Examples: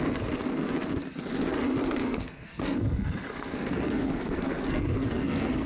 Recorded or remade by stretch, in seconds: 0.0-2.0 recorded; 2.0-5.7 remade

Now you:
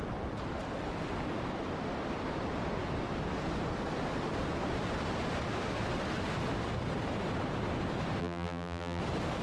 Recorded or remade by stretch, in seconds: 0.0-8.2 recorded; 8.2-9.0 remade; 9.0-9.4 recorded

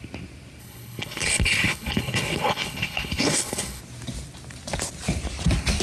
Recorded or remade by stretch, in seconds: 0.0-0.6 recorded; 0.6-3.8 remade; 3.8-5.8 recorded

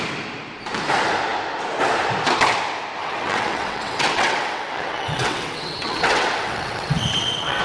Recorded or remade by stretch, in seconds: 0.0-3.0 recorded; 3.0-7.6 remade

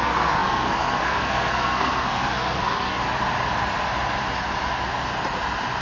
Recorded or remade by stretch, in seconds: 0.0-3.0 remade; 3.0-5.8 recorded

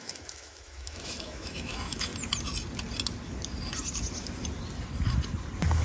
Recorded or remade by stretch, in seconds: 0.0-2.1 remade; 2.1-5.8 recorded

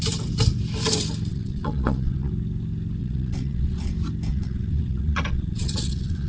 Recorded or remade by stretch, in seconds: 0.0-1.3 recorded; 1.3-2.3 remade; 2.3-3.0 recorded; 3.0-3.9 remade; 3.9-4.3 recorded; 4.3-6.3 remade